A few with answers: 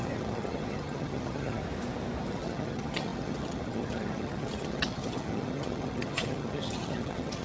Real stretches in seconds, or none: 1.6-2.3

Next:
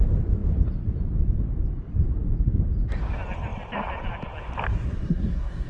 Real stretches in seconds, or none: 0.0-4.7

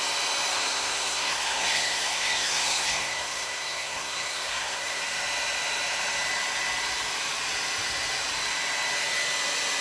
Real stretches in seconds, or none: 0.0-0.5; 5.0-9.8

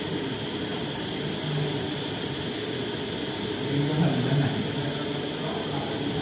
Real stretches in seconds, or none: 0.0-6.2

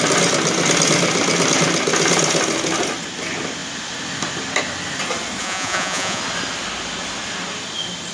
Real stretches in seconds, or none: 0.0-5.4; 6.2-8.1

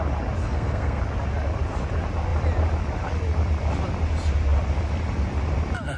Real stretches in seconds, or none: 0.0-0.4; 1.0-6.0